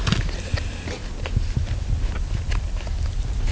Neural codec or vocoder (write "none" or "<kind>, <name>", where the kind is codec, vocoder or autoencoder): none